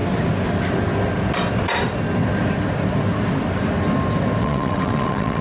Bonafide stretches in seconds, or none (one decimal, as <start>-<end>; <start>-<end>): 0.0-4.4